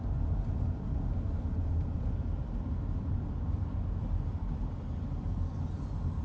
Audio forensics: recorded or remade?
recorded